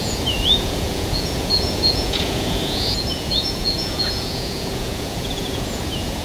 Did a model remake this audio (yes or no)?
yes